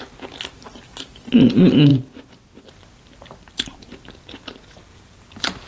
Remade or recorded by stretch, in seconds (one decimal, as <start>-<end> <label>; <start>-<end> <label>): 0.0-5.7 recorded